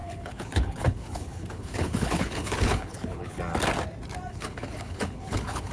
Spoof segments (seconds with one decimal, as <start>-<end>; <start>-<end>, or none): 0.0-3.4; 4.3-5.7